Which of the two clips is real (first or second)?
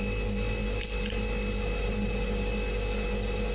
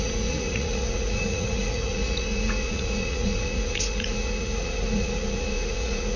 first